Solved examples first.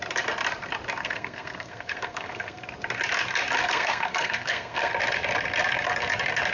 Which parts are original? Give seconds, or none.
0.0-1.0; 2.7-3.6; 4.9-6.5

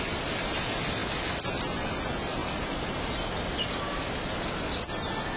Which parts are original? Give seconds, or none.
0.0-2.4; 4.3-5.4

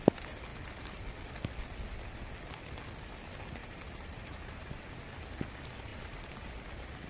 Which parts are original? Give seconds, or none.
0.0-3.6; 4.9-5.9; 6.5-7.1